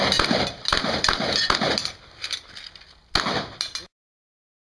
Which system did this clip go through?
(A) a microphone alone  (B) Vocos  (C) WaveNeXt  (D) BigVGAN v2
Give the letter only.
A